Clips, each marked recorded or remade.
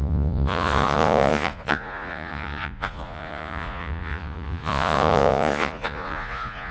remade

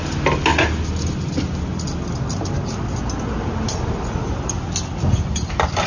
recorded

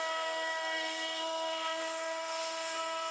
remade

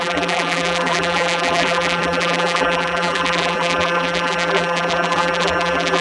remade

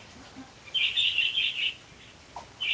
recorded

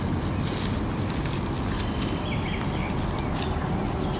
recorded